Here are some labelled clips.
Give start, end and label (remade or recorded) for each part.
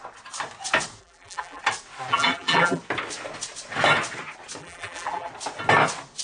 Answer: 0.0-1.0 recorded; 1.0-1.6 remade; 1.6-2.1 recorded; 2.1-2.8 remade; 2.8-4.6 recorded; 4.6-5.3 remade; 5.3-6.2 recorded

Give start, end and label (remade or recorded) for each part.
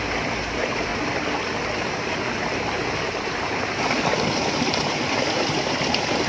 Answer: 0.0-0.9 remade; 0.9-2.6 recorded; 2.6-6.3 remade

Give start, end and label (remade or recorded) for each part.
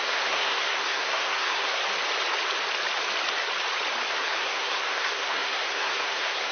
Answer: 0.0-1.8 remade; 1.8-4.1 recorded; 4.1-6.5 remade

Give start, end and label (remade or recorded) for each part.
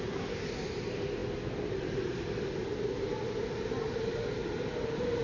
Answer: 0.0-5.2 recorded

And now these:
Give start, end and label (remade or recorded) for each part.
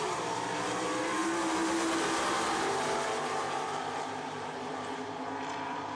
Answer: 0.0-5.9 remade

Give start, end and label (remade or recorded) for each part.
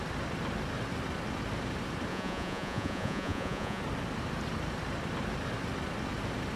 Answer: 0.0-2.1 recorded; 2.1-3.8 remade; 3.8-6.6 recorded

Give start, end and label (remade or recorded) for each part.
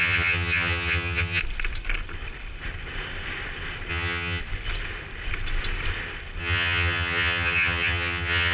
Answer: 0.0-1.4 remade; 1.4-3.9 recorded; 3.9-4.4 remade; 4.4-6.4 recorded; 6.4-8.5 remade